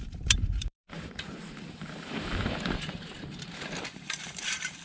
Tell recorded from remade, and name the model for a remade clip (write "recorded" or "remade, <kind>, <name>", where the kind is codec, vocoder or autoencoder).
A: remade, vocoder, BigVGAN v2